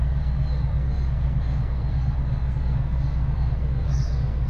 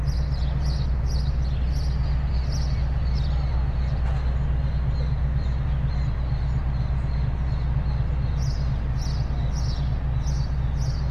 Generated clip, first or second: first